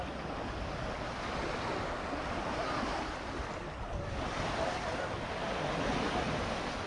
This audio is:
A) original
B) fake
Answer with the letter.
A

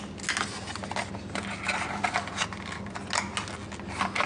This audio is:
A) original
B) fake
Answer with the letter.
A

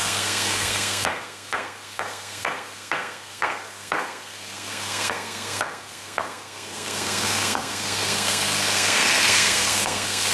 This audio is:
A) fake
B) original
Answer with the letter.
A